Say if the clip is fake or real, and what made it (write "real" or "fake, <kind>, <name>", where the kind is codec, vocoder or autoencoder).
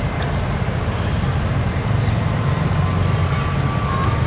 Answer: real